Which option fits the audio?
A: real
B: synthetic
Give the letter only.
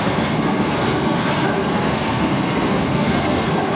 B